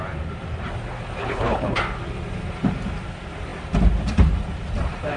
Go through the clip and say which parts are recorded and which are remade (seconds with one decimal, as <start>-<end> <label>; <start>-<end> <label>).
0.0-1.2 recorded; 1.2-1.8 remade; 1.8-5.2 recorded